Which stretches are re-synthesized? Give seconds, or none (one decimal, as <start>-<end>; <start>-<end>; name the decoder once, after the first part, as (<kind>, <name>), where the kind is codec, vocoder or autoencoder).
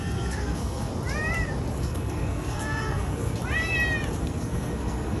0.0-0.9 (codec, SNAC); 1.8-3.4; 4.2-5.2